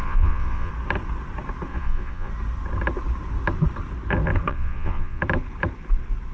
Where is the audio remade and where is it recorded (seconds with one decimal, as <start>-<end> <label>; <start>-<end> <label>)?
0.0-0.7 remade; 0.7-1.7 recorded; 1.7-2.3 remade; 2.3-4.5 recorded; 4.5-5.2 remade; 5.2-6.3 recorded

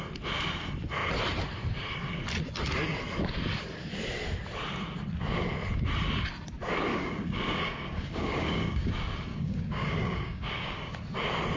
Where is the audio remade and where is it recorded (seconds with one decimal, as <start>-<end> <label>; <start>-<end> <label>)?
0.0-6.9 recorded; 6.9-8.9 remade; 8.9-9.3 recorded; 9.3-10.9 remade; 10.9-11.6 recorded

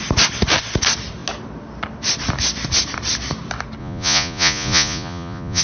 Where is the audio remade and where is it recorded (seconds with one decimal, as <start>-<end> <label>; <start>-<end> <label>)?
0.0-3.8 recorded; 3.8-5.6 remade

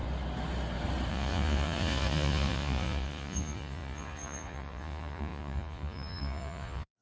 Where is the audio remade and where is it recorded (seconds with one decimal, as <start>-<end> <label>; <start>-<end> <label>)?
0.0-1.1 recorded; 1.1-7.0 remade

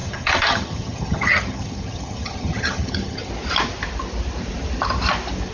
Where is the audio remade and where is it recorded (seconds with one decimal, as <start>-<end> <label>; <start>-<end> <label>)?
0.0-3.3 remade; 3.3-5.5 recorded

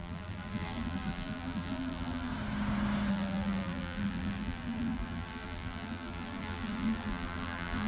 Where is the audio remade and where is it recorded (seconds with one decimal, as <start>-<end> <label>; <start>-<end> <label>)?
0.0-2.3 remade; 2.3-3.1 recorded; 3.1-7.9 remade